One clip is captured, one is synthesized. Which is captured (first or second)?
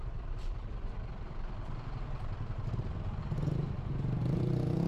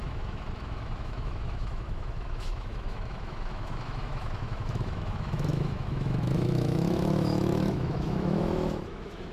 first